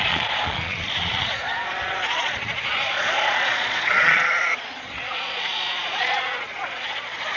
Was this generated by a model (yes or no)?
yes